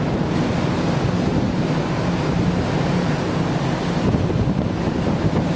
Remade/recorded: recorded